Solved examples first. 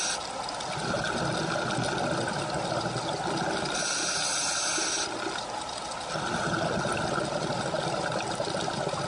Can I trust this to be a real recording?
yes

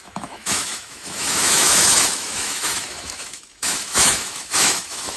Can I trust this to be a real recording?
no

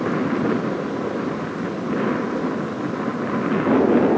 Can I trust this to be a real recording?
yes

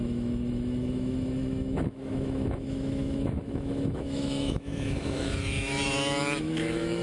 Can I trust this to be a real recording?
no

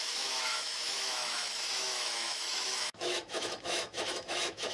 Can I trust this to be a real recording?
no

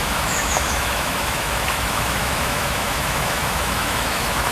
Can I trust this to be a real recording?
no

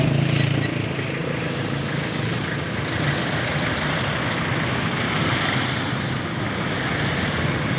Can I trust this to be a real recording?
yes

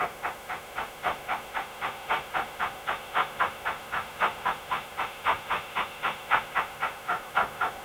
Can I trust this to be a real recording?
no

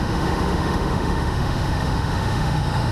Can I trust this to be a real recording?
no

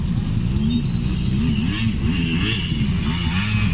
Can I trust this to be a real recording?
yes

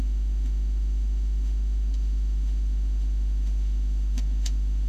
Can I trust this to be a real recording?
no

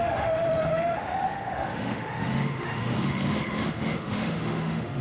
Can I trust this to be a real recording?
no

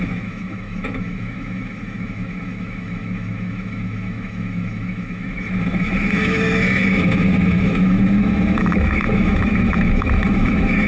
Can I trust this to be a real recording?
no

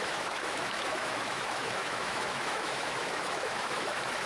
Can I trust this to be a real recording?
no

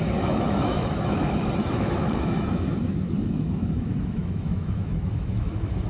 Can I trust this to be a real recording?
no